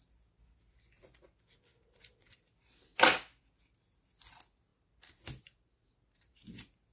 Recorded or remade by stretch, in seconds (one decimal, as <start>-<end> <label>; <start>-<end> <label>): 0.0-6.9 recorded